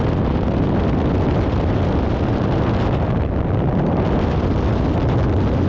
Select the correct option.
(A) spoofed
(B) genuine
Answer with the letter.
B